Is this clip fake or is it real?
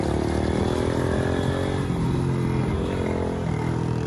real